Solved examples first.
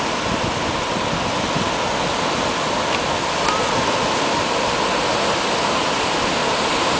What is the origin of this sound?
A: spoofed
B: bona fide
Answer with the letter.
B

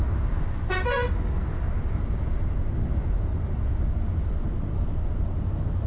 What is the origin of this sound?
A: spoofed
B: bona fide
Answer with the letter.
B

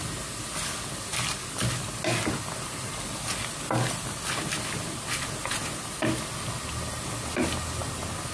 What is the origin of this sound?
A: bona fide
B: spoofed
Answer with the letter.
A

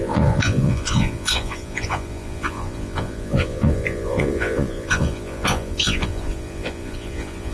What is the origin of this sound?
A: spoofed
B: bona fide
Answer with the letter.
A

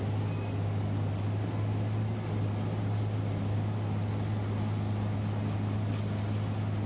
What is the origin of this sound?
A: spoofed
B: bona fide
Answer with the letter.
B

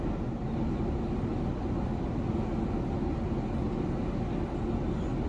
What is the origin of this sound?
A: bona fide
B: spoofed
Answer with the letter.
A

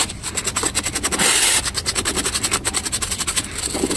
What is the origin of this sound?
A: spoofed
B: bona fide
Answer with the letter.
B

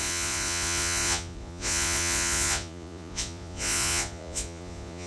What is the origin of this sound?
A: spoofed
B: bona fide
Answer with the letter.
A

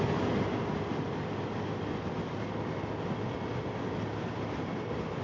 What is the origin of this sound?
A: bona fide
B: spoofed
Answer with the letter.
A